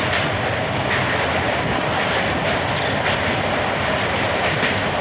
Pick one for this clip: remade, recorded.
remade